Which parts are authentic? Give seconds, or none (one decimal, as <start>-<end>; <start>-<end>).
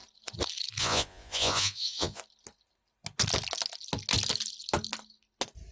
0.0-0.8; 2.2-5.7